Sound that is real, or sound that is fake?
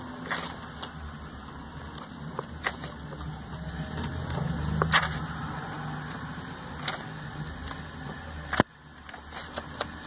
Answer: real